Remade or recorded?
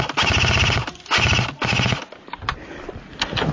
recorded